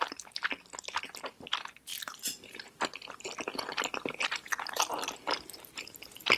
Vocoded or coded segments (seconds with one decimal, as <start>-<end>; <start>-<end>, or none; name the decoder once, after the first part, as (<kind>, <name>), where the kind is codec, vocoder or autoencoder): none